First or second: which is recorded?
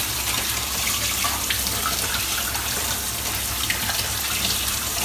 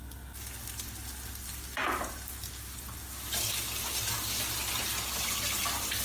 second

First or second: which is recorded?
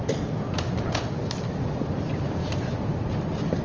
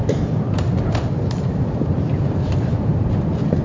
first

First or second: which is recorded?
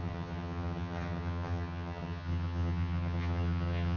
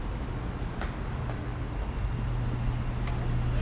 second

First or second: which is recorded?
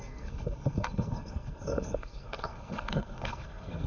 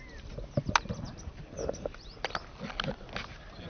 second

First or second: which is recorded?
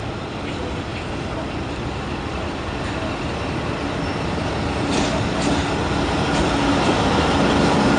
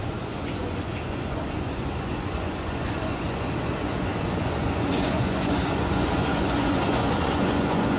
first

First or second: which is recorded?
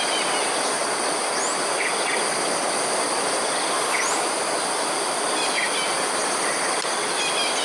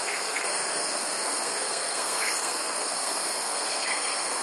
first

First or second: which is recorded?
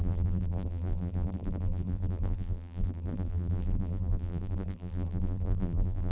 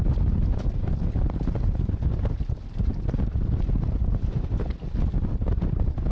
second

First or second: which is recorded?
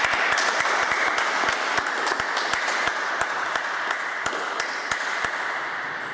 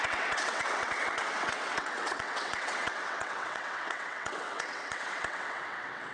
first